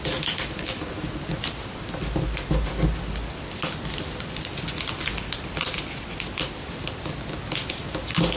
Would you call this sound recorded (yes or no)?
yes